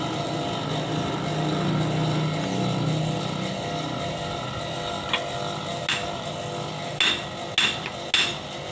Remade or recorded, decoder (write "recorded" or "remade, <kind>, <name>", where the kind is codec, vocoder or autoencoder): recorded